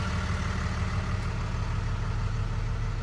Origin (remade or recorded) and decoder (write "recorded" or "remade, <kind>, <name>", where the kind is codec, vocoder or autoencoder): recorded